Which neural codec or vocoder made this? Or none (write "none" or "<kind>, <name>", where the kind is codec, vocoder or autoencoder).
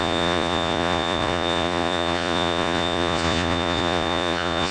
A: vocoder, Vocos